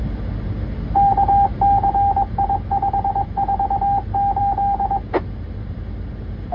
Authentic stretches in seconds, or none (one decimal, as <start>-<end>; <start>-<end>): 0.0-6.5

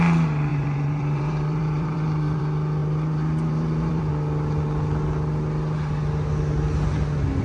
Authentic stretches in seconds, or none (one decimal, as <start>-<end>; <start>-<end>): 0.0-0.5; 2.4-2.8; 4.1-7.4

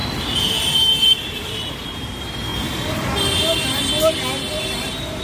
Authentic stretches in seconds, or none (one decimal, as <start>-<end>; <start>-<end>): 0.0-0.6; 2.5-4.6